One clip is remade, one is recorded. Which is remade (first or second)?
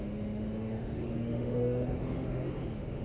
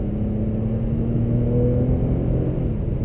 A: first